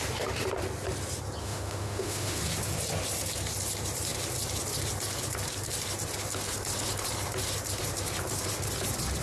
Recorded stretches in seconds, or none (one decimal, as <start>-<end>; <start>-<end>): 0.0-1.4; 2.4-9.2